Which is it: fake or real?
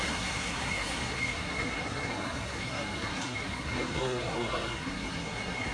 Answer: fake